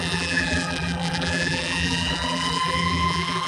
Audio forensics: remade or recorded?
remade